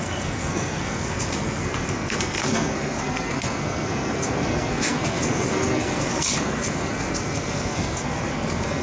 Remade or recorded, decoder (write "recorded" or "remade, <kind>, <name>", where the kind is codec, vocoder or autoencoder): remade, codec, SNAC